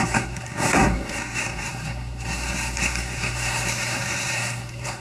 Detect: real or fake fake